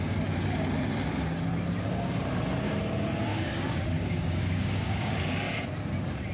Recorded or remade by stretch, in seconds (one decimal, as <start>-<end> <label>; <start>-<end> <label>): 0.0-3.3 recorded; 3.3-5.1 remade; 5.1-6.3 recorded